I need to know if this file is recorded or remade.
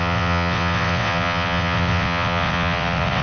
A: remade